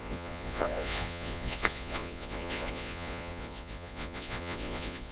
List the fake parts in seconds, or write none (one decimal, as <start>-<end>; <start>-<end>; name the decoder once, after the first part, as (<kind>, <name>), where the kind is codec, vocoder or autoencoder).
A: 0.0-5.1 (vocoder, Vocos)